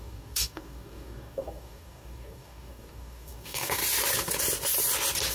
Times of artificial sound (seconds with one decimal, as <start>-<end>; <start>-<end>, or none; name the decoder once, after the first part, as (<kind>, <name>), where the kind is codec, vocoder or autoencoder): 0.0-3.8 (codec, DAC)